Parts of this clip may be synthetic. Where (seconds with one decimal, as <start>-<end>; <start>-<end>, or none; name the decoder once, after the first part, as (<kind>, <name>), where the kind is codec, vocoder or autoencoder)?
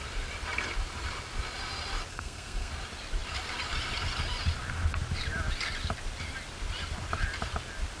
2.1-2.7 (codec, SNAC)